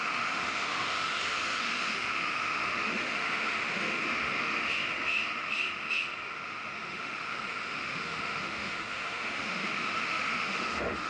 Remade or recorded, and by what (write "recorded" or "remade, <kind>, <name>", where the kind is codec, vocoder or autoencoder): remade, autoencoder, DAC-VAE